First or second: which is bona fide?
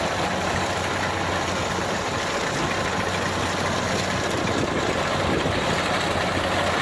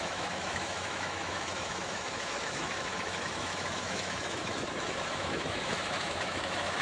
first